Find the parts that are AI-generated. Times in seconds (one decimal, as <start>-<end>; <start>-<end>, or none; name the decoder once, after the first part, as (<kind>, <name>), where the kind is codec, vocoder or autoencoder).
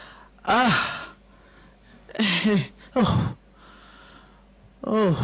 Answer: 1.0-3.0 (codec, DAC)